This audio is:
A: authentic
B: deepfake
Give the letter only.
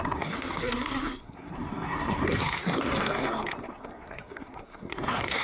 B